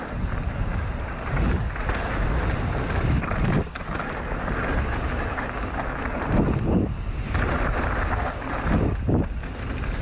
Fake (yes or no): no